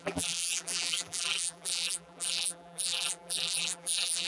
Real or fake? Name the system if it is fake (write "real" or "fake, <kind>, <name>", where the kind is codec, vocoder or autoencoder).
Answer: fake, vocoder, BigVGAN v2